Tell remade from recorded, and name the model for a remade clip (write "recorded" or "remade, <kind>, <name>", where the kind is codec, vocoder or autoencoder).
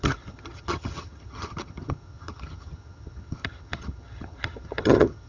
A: remade, vocoder, HiFi-GAN